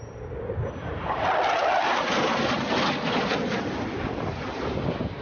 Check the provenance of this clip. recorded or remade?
recorded